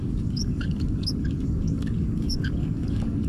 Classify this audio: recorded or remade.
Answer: remade